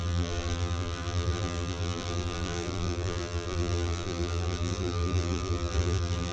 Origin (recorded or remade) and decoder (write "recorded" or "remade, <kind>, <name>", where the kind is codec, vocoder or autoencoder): remade, vocoder, BigVGAN v2